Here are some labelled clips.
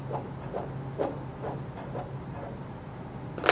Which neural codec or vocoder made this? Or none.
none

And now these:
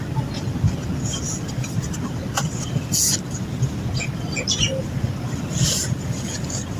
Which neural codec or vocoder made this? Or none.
none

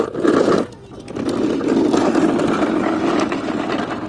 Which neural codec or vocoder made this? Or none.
none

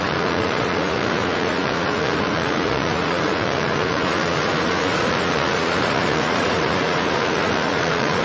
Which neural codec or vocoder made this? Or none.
vocoder, Vocos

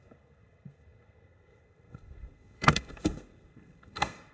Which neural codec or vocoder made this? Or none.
codec, SNAC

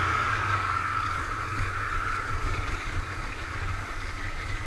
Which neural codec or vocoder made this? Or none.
codec, DAC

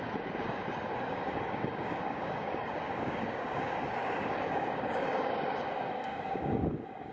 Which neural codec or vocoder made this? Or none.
codec, DAC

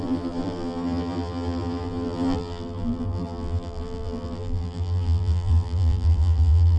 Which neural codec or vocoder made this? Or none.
vocoder, BigVGAN v2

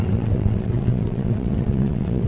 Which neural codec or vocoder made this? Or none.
vocoder, WaveNeXt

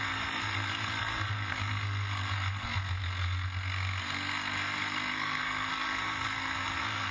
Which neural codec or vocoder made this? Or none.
codec, SNAC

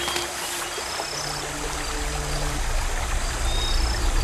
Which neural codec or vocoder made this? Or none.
none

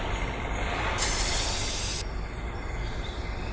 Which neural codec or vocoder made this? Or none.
none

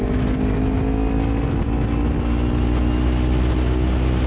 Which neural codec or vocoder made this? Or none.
none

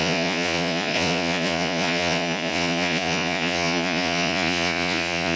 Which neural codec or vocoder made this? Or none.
vocoder, Vocos